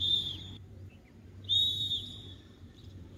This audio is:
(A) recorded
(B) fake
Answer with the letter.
B